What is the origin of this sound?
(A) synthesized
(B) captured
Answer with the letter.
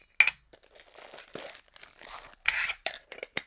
B